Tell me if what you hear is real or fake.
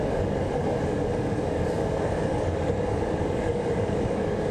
fake